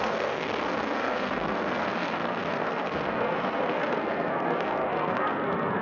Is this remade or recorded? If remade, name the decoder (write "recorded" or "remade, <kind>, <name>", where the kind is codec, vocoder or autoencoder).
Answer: remade, codec, SNAC